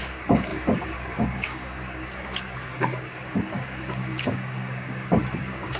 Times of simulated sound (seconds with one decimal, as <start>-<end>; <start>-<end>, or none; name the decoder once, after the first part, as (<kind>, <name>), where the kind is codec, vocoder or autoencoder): 0.0-5.8 (codec, DAC)